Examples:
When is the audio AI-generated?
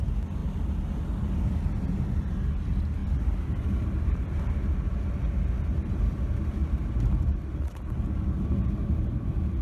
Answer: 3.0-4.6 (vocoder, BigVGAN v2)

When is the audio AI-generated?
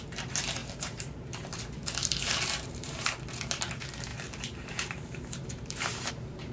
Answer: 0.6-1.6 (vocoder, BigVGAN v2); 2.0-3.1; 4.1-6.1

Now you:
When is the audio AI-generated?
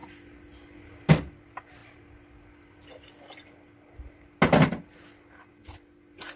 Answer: none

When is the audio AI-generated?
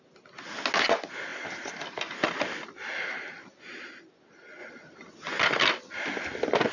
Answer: 1.3-3.6 (vocoder, BigVGAN v2)